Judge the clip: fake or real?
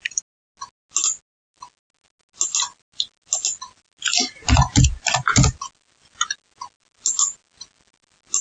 real